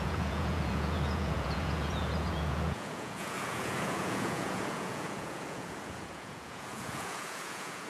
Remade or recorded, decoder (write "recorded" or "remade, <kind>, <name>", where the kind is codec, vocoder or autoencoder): remade, vocoder, Vocos